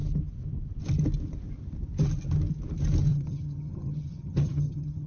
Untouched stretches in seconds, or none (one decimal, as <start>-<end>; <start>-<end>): 0.0-3.1